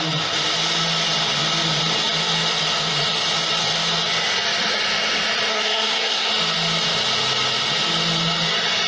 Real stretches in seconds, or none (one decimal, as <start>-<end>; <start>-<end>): 0.0-5.5; 6.3-8.9